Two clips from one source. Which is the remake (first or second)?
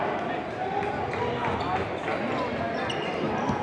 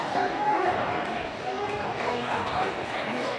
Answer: second